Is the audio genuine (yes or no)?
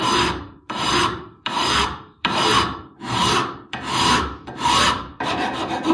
no